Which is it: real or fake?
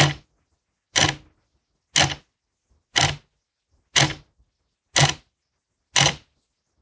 real